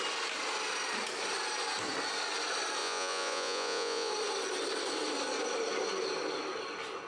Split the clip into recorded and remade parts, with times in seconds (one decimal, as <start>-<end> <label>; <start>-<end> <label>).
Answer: 0.0-2.8 recorded; 2.8-4.1 remade; 4.1-7.1 recorded